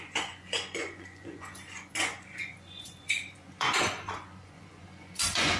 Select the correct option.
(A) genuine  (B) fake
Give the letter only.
B